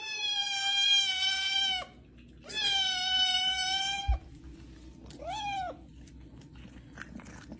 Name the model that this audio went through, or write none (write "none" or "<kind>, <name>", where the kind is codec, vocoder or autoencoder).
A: none